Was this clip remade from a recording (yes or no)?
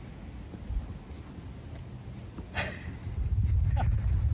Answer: no